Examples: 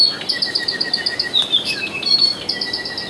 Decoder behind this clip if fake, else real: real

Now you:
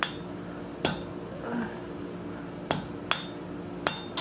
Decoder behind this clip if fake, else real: real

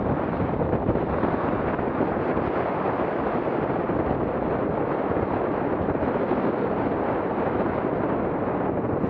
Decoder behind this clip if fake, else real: real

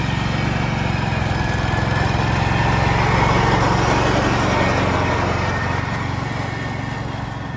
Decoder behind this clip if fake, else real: real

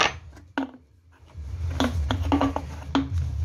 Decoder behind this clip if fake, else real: real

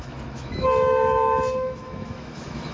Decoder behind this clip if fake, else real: fake, autoencoder, DAC-VAE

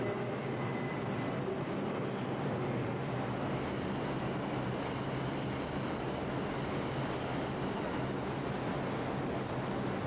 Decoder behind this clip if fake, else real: real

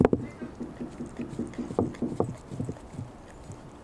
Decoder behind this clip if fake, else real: real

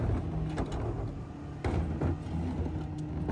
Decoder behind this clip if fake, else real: real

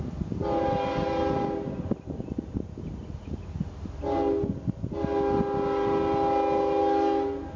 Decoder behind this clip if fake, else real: real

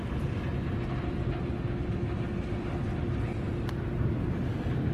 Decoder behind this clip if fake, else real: real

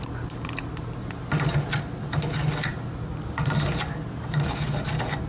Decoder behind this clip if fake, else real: real